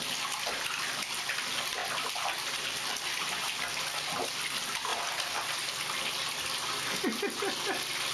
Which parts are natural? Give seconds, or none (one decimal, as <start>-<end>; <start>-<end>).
0.0-8.1